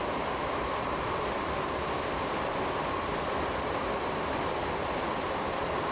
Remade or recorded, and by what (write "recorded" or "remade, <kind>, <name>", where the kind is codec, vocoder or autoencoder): remade, vocoder, BigVGAN v2